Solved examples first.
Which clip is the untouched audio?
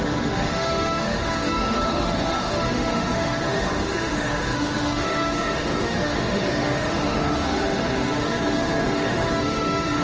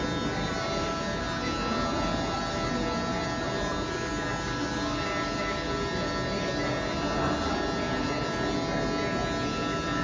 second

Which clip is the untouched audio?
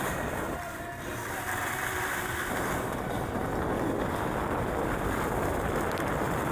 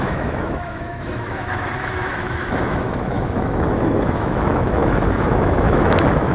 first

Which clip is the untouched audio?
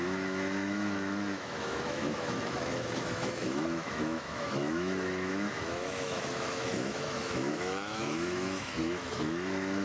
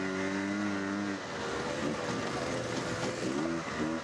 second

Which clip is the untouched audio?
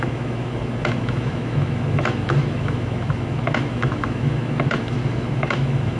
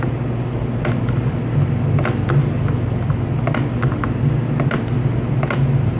second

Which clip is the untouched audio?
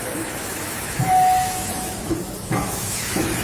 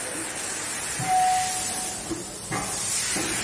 second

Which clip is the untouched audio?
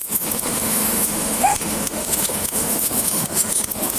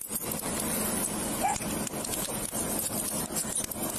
second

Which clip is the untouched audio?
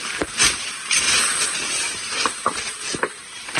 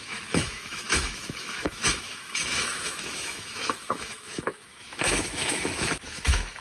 first